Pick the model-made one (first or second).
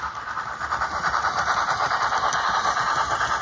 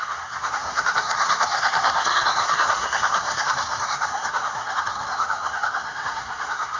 second